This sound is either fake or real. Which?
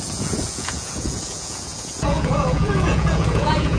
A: fake